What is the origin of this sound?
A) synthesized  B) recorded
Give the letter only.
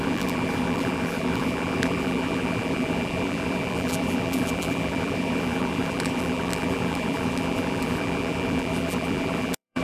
A